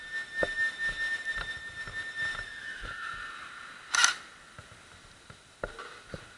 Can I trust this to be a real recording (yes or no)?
yes